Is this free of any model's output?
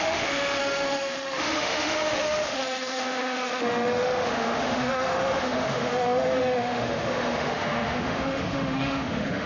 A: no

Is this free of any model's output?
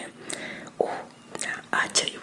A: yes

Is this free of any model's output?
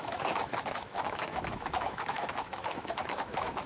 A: no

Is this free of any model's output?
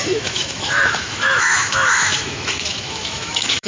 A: no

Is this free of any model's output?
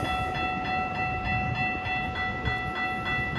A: yes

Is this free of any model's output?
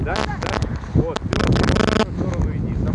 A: yes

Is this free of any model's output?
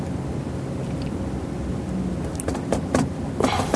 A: yes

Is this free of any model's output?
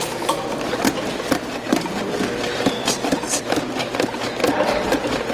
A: yes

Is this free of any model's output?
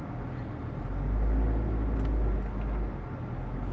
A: yes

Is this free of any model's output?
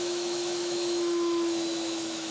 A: no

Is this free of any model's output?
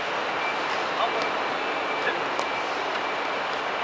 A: yes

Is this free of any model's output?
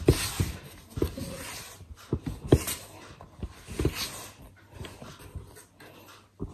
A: yes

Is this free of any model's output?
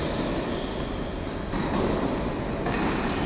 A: yes